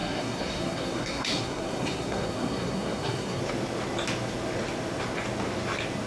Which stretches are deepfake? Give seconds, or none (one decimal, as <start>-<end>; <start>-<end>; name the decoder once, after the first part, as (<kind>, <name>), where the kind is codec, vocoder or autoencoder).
0.0-3.4 (codec, SNAC)